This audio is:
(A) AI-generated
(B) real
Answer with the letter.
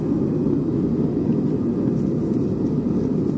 B